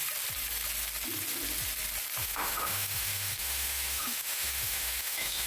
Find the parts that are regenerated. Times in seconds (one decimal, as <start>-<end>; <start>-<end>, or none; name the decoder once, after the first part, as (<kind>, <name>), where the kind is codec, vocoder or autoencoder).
2.2-5.5 (autoencoder, DAC-VAE)